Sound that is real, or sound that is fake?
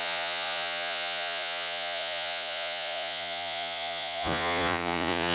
fake